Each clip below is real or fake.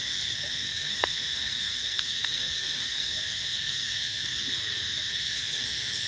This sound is fake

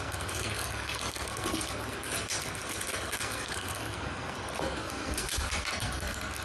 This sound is fake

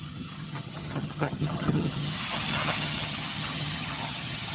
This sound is fake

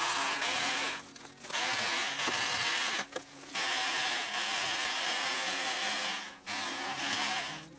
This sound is real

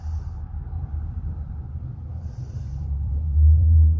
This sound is fake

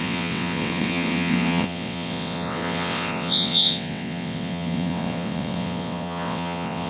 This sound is fake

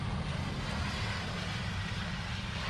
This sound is real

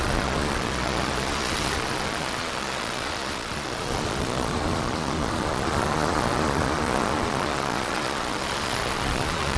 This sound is fake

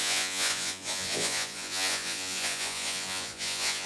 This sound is fake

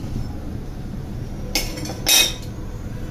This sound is real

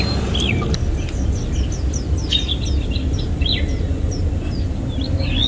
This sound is real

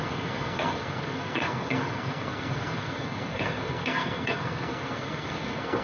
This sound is fake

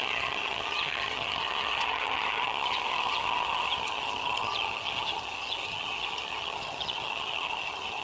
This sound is fake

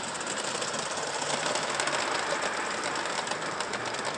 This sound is real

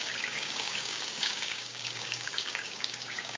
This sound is fake